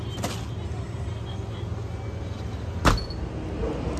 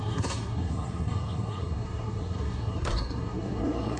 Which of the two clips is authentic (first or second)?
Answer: first